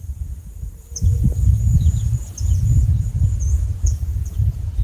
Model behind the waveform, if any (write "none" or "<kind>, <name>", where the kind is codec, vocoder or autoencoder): vocoder, Vocos